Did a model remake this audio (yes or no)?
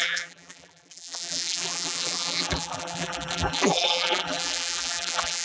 yes